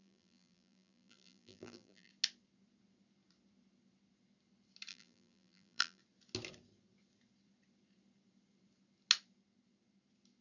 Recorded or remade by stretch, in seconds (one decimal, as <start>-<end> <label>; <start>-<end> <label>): 0.0-2.1 remade; 2.1-4.9 recorded; 4.9-6.0 remade; 6.0-10.4 recorded